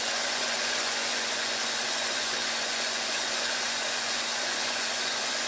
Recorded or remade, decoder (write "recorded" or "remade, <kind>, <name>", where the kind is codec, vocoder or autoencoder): remade, vocoder, Vocos